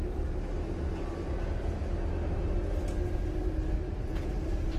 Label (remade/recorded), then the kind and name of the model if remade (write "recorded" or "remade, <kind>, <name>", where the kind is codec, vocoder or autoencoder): recorded